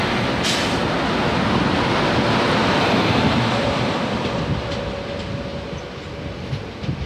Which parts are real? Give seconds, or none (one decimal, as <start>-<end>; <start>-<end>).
0.0-2.6; 4.4-7.1